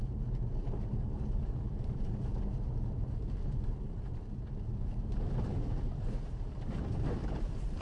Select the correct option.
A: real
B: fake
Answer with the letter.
B